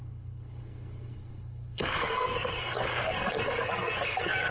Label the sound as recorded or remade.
remade